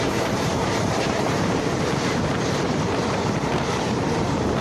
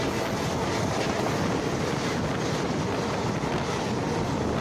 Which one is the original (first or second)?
second